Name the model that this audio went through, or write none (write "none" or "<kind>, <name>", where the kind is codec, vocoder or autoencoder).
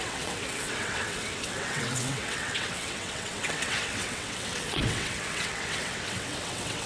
vocoder, WaveNeXt